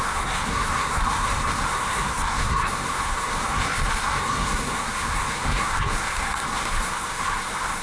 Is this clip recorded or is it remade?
remade